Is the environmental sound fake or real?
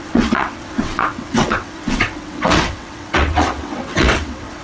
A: fake